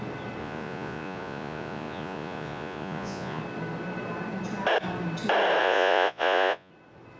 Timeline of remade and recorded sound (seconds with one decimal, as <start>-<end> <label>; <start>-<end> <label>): 0.0-0.4 recorded; 0.4-3.4 remade; 3.4-5.6 recorded; 5.6-6.7 remade; 6.7-7.2 recorded